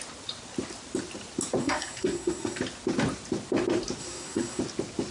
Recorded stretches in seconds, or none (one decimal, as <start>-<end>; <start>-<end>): 0.0-1.6; 2.6-4.0; 4.6-5.1